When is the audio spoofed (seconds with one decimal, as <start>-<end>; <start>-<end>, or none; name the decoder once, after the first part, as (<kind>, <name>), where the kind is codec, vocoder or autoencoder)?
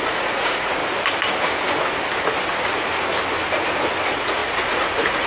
0.0-0.8 (vocoder, Vocos); 4.0-5.3